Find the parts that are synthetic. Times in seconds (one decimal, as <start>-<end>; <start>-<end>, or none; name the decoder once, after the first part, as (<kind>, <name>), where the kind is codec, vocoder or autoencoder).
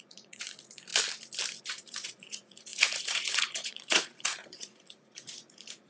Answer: 0.0-0.9 (vocoder, Vocos); 1.6-5.9